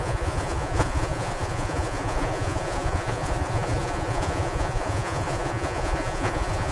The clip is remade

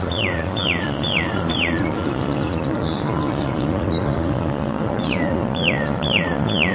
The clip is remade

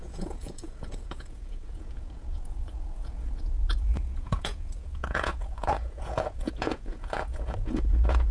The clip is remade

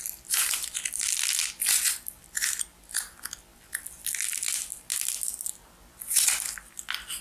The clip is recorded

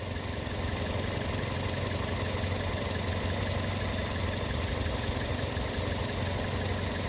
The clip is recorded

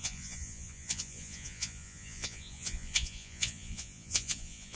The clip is remade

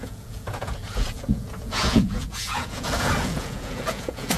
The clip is remade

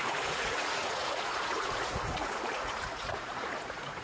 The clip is remade